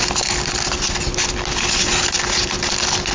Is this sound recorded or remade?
recorded